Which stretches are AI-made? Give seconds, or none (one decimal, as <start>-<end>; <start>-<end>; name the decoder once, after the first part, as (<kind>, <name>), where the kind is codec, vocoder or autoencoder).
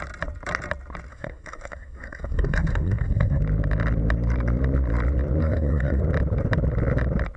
1.1-3.4 (codec, SNAC); 5.4-6.0